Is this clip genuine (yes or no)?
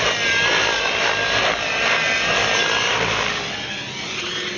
yes